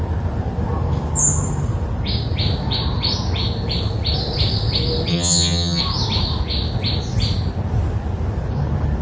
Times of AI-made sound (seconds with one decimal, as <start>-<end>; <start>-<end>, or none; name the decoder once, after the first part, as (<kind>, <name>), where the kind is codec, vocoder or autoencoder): 5.1-5.8 (vocoder, HiFi-GAN)